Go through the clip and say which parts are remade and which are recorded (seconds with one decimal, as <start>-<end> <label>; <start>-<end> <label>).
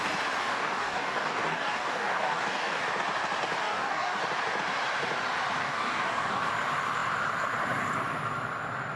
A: 0.0-0.4 recorded; 0.4-2.8 remade; 2.8-3.6 recorded; 3.6-4.2 remade; 4.2-5.6 recorded; 5.6-6.5 remade; 6.5-9.0 recorded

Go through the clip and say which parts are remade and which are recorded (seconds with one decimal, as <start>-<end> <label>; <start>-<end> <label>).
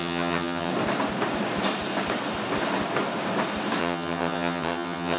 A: 0.0-0.7 remade; 0.7-3.8 recorded; 3.8-5.2 remade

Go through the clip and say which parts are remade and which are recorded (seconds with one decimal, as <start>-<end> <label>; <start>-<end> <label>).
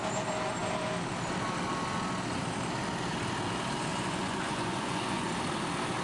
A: 0.0-3.9 recorded; 3.9-5.3 remade; 5.3-6.0 recorded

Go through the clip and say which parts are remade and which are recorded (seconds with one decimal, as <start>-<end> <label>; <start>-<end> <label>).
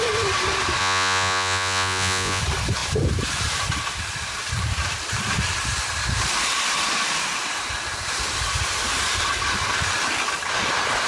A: 0.0-0.8 recorded; 0.8-2.4 remade; 2.4-11.1 recorded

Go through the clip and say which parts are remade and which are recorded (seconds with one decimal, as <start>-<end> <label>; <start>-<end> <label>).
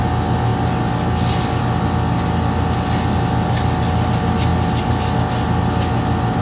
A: 0.0-6.4 recorded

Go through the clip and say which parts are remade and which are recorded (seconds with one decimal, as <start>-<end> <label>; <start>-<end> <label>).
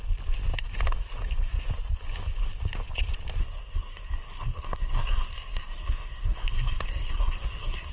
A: 0.0-3.4 recorded; 3.4-7.9 remade